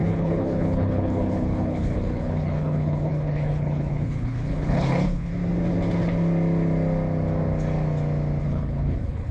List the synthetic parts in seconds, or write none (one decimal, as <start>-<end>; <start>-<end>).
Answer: 0.0-5.3; 8.4-9.3